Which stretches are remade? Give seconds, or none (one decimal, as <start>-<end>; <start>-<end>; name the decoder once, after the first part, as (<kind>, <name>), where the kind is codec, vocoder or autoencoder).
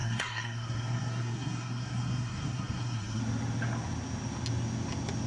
0.0-3.2 (codec, SNAC)